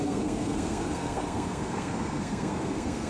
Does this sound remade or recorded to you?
remade